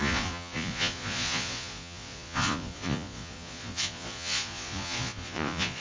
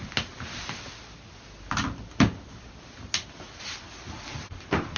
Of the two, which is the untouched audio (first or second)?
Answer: second